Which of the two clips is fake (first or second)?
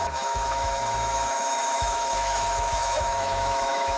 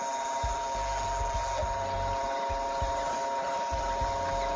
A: first